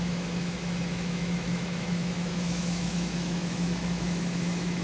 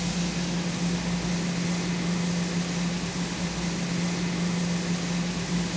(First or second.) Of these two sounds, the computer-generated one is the first